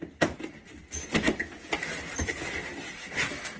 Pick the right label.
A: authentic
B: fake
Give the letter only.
A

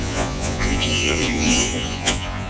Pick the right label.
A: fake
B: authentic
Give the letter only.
A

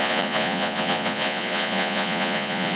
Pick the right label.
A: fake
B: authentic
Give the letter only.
A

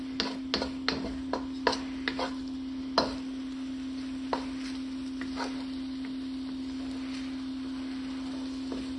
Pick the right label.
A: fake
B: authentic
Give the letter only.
B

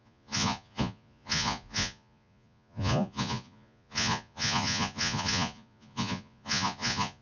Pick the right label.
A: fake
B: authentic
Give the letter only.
A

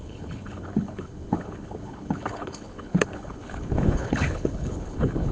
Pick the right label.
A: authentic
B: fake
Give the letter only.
B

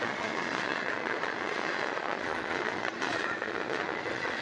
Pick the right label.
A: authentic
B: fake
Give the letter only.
B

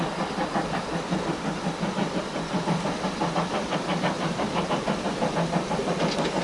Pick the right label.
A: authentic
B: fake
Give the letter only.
B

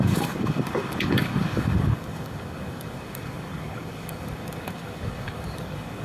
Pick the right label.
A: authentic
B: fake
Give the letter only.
B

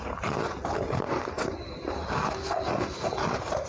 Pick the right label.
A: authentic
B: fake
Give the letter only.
A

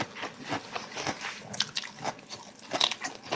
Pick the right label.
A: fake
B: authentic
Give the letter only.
B